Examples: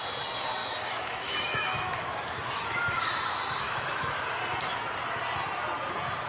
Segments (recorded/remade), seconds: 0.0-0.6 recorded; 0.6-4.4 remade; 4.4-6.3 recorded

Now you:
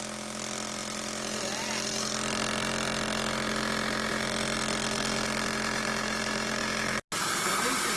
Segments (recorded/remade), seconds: 0.0-8.0 recorded

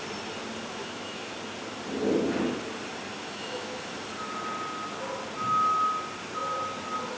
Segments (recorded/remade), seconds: 0.0-0.8 recorded; 0.8-1.3 remade; 1.3-3.1 recorded; 3.1-3.8 remade; 3.8-7.2 recorded